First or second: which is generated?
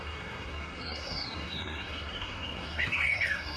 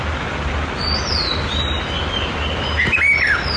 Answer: first